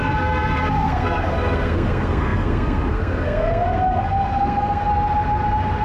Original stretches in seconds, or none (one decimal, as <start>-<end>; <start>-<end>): 4.9-5.8